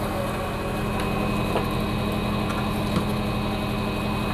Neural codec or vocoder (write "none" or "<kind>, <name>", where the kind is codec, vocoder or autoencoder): none